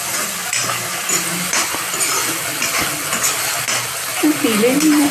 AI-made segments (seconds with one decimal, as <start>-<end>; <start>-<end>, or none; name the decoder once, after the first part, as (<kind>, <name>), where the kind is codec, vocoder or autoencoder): none